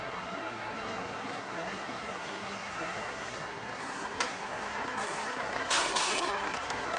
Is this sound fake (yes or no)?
yes